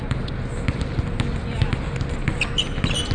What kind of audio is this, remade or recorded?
recorded